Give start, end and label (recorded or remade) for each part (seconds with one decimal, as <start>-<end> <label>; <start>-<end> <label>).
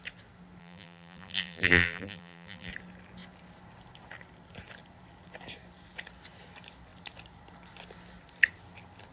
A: 0.0-0.6 recorded; 0.6-2.7 remade; 2.7-9.1 recorded